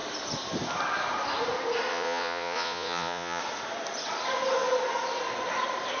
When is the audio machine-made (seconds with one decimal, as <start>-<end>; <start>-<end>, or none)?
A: 1.9-3.4